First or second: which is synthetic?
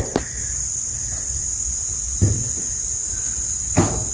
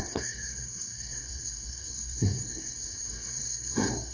second